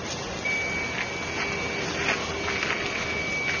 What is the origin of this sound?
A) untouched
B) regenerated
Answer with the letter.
A